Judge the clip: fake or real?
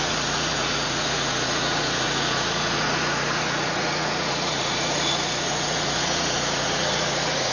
fake